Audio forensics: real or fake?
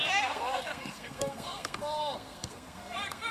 fake